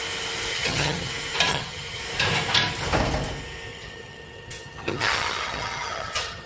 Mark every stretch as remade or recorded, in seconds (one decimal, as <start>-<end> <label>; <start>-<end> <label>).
0.0-0.5 recorded; 0.5-1.1 remade; 1.1-1.5 recorded; 1.5-2.0 remade; 2.0-3.7 recorded; 3.7-6.5 remade